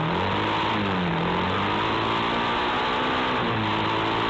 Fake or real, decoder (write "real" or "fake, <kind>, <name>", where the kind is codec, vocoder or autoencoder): real